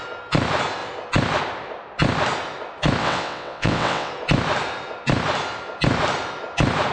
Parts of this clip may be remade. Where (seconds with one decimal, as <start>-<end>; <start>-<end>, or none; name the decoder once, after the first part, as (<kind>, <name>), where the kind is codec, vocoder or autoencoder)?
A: 3.0-4.1 (vocoder, WaveNeXt)

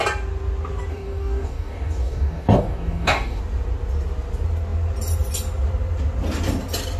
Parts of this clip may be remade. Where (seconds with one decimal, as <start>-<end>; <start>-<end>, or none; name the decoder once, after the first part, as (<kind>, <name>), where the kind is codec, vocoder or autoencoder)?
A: 0.9-3.4 (codec, DAC)

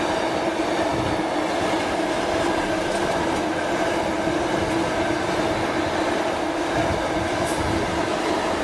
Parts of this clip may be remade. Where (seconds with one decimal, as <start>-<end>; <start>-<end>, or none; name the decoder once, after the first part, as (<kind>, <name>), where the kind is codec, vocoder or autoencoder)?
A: none

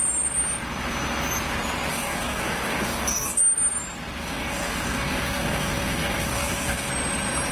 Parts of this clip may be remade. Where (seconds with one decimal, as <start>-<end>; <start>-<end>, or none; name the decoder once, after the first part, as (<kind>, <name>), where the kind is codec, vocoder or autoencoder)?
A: 1.9-3.4 (codec, DAC); 4.2-6.9

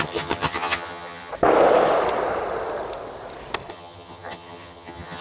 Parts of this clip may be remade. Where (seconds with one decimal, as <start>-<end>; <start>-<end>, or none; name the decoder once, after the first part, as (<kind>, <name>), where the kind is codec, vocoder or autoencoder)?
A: 0.0-1.3 (vocoder, HiFi-GAN); 3.7-5.2

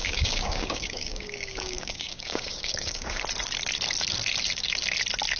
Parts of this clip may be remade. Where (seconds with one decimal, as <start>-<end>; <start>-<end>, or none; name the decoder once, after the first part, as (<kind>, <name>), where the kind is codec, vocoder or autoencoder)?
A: 0.0-3.2 (codec, DAC)